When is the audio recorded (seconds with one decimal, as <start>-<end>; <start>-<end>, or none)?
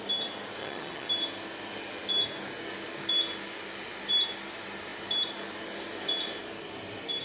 0.0-0.6; 1.1-7.2